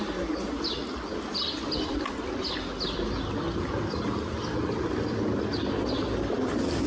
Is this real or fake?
real